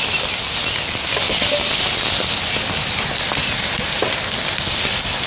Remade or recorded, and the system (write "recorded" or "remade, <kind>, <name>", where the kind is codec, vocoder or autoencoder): recorded